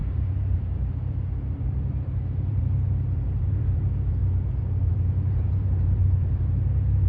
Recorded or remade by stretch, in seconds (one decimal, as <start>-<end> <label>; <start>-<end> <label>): 0.0-4.2 remade; 4.2-4.8 recorded; 4.8-7.1 remade